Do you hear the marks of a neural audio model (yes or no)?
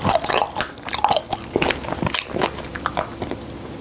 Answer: no